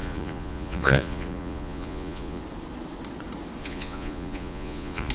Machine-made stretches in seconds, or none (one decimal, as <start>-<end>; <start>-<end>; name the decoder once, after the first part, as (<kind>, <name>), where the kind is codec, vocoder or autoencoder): 0.0-2.4 (vocoder, Vocos); 3.6-5.1